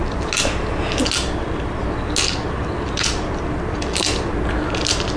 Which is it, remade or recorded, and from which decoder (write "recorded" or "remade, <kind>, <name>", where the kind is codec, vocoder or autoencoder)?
recorded